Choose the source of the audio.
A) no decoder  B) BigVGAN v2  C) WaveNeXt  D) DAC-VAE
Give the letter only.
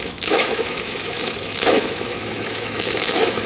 D